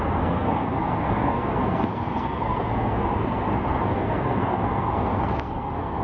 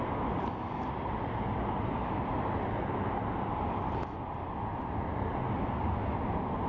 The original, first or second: second